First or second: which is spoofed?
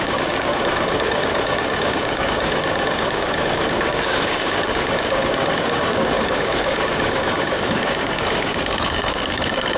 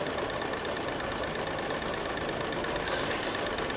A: first